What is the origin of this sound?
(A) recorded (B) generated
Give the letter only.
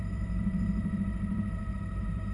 B